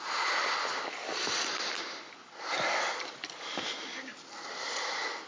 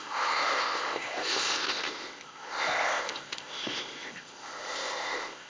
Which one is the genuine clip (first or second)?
first